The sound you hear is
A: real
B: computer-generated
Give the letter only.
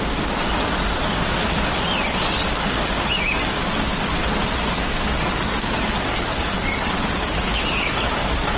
A